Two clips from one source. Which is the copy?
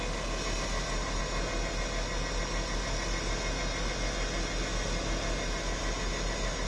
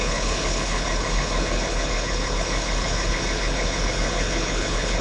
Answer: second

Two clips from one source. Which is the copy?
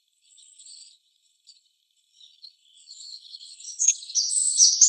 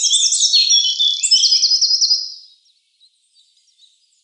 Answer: first